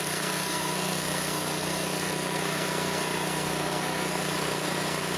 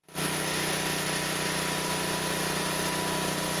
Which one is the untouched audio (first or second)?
second